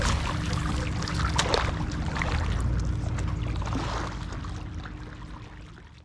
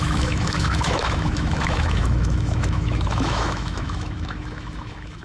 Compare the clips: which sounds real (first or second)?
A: first